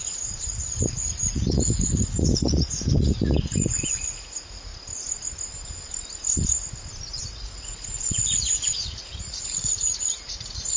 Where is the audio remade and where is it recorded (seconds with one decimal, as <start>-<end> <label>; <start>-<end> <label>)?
0.0-4.7 remade; 4.7-7.2 recorded; 7.2-10.8 remade